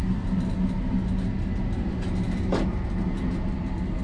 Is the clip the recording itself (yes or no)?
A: yes